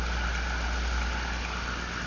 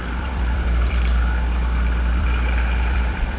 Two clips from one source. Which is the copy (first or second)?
second